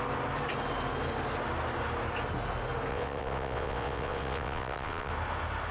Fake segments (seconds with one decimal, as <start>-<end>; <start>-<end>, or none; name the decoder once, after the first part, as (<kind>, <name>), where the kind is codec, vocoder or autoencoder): 2.9-5.1 (vocoder, WaveNeXt)